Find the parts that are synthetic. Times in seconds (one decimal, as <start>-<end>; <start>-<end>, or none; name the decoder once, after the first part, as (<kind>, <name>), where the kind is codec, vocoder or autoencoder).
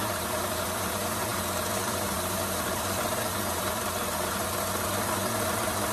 0.0-5.9 (vocoder, BigVGAN v2)